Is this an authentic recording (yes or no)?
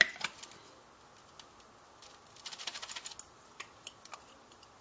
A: yes